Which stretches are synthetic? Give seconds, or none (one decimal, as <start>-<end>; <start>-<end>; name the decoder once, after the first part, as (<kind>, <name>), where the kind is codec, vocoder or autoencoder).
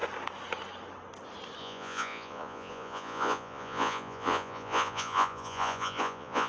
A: 1.6-6.5 (vocoder, Vocos)